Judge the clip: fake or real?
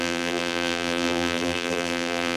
fake